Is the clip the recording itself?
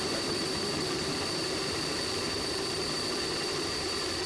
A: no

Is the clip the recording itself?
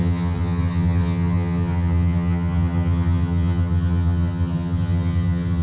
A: no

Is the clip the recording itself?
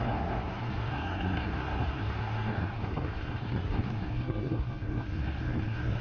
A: no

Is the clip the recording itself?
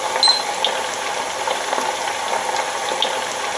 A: yes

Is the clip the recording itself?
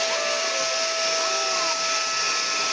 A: yes